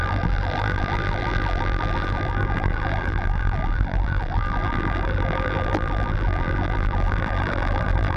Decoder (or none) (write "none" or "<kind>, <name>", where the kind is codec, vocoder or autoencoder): vocoder, BigVGAN v2